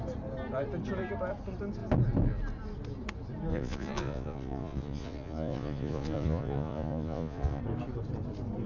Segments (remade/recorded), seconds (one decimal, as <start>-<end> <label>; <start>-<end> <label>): 0.0-3.5 recorded; 3.5-7.6 remade; 7.6-8.7 recorded